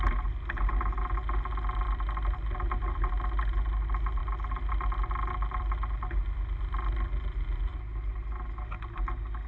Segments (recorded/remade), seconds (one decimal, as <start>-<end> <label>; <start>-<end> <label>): 0.0-9.5 recorded

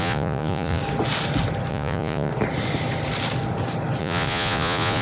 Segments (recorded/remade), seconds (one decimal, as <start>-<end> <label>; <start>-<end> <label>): 0.0-0.8 remade; 0.8-1.7 recorded; 1.7-2.3 remade; 2.3-4.0 recorded; 4.0-5.0 remade

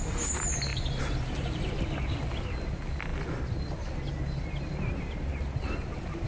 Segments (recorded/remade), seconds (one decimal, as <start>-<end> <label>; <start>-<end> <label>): 0.0-0.7 recorded; 0.7-1.7 remade; 1.7-6.3 recorded

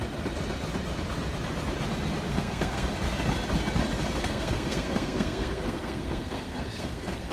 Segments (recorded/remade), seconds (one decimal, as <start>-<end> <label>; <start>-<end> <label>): 0.0-2.3 recorded; 2.3-2.9 remade; 2.9-4.2 recorded; 4.2-7.3 remade

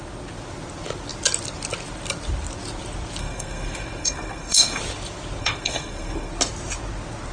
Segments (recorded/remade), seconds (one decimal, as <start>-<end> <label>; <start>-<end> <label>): 0.0-3.2 recorded; 3.2-4.8 remade; 4.8-5.4 recorded; 5.4-6.3 remade; 6.3-7.3 recorded